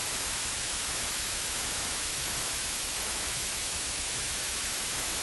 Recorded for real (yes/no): no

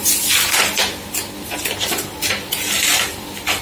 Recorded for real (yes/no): yes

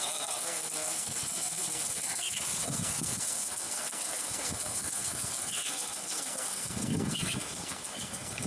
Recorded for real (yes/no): no